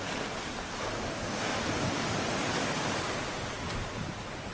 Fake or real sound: real